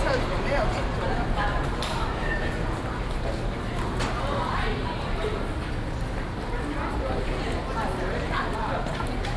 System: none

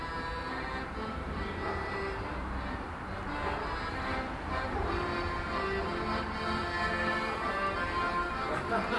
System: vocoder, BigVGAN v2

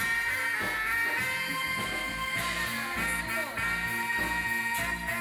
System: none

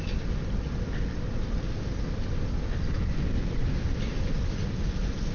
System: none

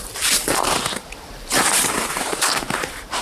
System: vocoder, BigVGAN v2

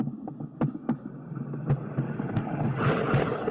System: none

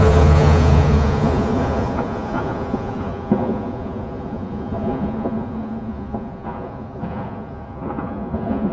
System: vocoder, Vocos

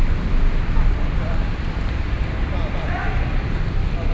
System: none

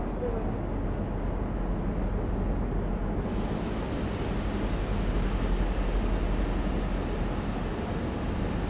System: none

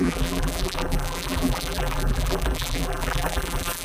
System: vocoder, BigVGAN v2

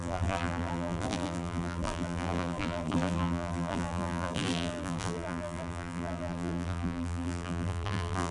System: vocoder, BigVGAN v2